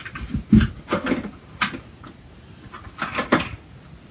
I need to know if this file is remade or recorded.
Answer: recorded